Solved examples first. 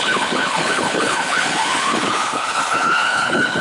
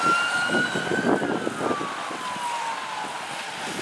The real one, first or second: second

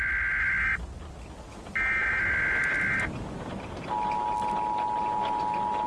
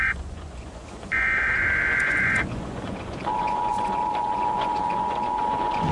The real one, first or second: first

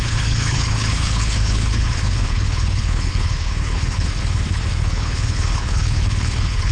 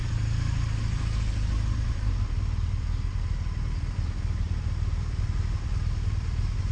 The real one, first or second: second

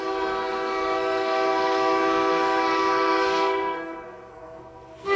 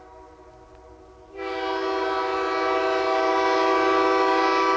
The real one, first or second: second